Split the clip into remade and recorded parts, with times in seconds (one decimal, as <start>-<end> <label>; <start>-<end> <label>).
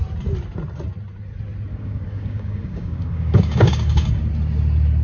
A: 0.0-1.7 recorded; 1.7-4.2 remade; 4.2-5.0 recorded